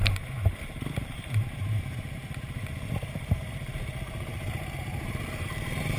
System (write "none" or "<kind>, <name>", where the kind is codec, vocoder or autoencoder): vocoder, BigVGAN v2